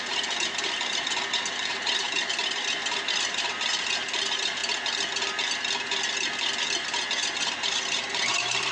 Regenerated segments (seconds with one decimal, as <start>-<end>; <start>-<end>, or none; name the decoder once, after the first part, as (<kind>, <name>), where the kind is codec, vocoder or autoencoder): 0.0-4.6 (vocoder, BigVGAN v2); 6.4-8.7